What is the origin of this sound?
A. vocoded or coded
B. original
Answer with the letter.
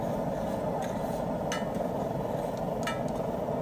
B